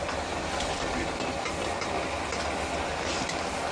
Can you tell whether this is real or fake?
real